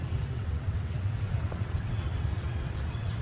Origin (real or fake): fake